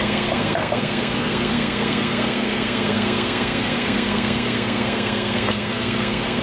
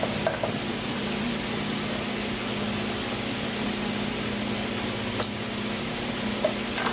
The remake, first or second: first